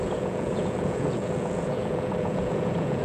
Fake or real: fake